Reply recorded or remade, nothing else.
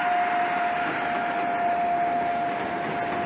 recorded